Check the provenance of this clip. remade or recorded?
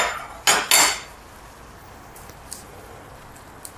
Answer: recorded